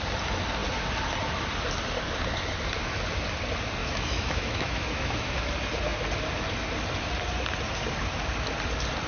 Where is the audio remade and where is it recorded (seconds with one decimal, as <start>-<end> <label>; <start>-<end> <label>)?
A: 0.0-3.8 recorded; 3.8-5.5 remade; 5.5-9.1 recorded